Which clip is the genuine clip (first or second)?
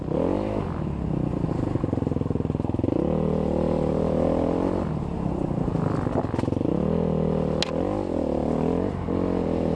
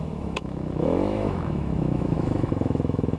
first